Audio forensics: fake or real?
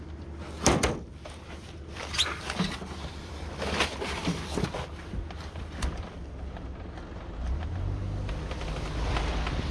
real